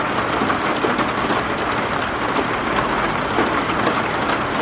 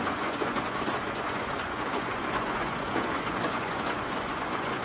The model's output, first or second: second